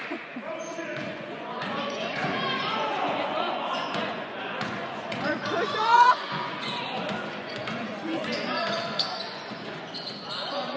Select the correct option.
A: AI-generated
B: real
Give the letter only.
A